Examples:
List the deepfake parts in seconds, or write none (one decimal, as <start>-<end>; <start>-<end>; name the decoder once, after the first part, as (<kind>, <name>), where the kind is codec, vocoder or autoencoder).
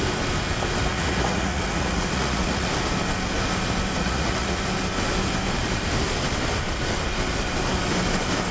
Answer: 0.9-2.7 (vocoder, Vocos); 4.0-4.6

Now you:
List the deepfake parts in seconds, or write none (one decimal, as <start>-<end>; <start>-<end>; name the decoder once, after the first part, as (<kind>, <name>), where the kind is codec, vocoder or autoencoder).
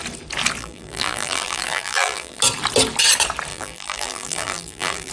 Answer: 0.6-2.4 (vocoder, BigVGAN v2); 3.5-5.1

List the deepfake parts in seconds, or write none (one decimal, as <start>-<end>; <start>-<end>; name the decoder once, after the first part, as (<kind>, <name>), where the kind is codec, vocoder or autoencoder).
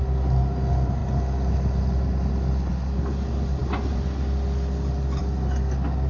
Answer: none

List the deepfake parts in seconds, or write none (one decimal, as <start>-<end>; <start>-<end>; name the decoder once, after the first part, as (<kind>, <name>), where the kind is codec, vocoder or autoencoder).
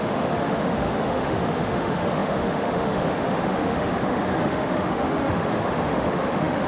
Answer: 0.0-6.7 (autoencoder, DAC-VAE)